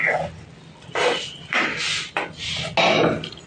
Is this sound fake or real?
real